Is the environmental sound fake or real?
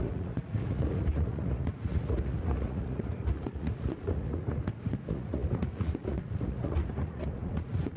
fake